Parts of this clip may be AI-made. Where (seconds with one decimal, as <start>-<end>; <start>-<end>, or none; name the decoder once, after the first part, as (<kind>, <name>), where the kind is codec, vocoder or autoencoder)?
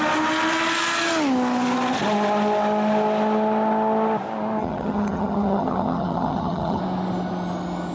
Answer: 4.6-6.8 (vocoder, HiFi-GAN)